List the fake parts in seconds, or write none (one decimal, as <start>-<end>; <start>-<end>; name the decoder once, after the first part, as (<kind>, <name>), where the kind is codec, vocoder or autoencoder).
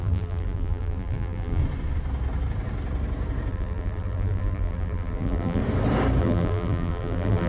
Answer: 0.0-1.6 (vocoder, BigVGAN v2); 3.5-5.6; 6.2-7.5